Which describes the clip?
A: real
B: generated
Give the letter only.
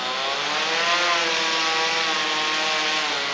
A